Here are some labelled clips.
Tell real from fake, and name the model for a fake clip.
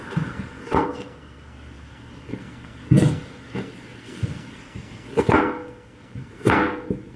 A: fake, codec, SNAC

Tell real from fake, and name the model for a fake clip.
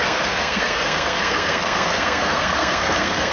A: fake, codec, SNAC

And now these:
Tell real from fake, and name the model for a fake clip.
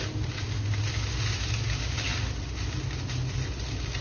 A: real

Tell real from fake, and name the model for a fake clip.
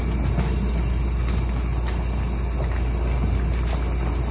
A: real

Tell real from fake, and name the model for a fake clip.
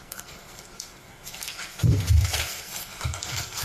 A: fake, codec, SNAC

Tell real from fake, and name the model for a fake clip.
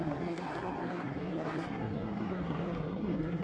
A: fake, codec, SNAC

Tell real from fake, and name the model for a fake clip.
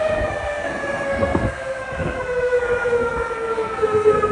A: fake, codec, SNAC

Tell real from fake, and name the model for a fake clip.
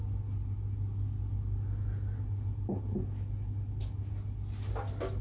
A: real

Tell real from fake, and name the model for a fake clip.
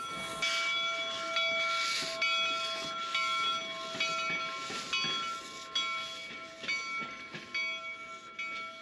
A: real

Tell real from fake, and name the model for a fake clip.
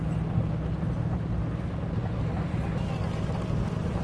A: real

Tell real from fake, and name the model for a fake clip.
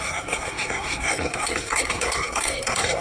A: fake, codec, SNAC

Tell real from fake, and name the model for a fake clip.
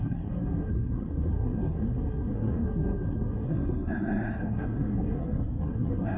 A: fake, codec, SNAC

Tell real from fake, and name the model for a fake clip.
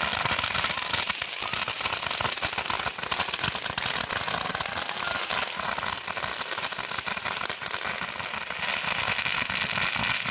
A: real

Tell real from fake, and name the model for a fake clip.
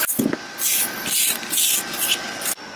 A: real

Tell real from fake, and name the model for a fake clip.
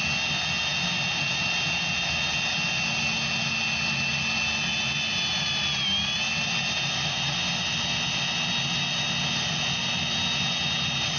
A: real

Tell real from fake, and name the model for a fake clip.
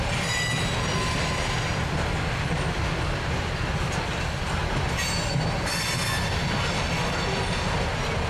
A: real